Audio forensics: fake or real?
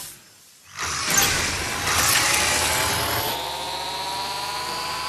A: real